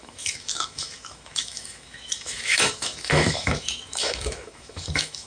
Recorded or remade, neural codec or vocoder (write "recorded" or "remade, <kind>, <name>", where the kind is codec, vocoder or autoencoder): remade, autoencoder, DAC-VAE